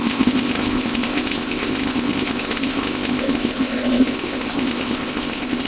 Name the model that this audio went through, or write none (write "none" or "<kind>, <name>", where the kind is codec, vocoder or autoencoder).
codec, ZipCodec